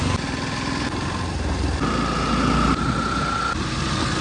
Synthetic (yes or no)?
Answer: no